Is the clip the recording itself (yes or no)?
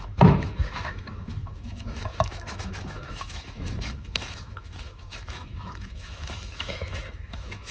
no